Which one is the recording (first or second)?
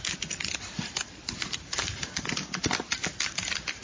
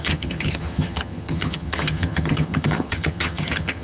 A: first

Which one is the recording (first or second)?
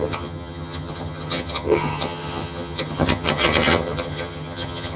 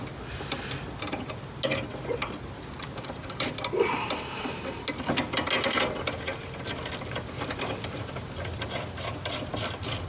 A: second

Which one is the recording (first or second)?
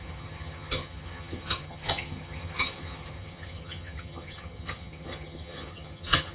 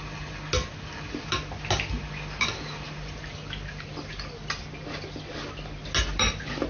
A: second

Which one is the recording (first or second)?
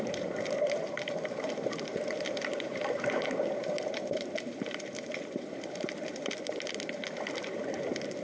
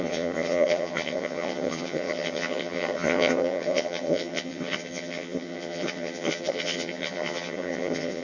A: first